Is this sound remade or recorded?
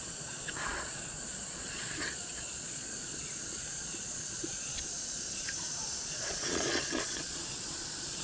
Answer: remade